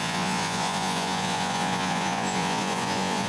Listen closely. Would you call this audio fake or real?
fake